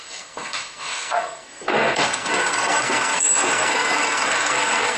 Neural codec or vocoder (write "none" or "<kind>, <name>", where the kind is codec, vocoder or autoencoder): codec, SNAC